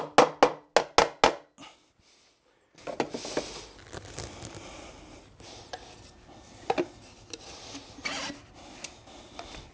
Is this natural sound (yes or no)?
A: yes